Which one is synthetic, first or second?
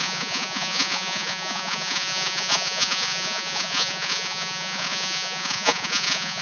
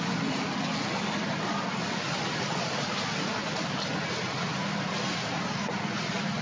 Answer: first